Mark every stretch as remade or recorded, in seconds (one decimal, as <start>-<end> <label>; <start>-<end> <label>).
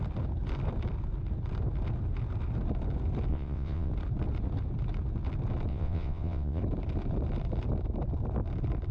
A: 0.0-3.3 recorded; 3.3-3.9 remade; 3.9-5.7 recorded; 5.7-6.6 remade; 6.6-8.9 recorded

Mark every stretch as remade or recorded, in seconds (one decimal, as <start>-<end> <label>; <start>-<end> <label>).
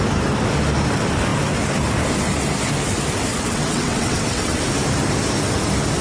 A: 0.0-3.3 recorded; 3.3-4.6 remade; 4.6-6.0 recorded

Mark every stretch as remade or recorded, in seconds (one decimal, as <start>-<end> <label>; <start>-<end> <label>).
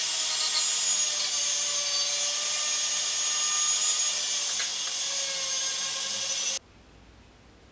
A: 0.0-7.7 recorded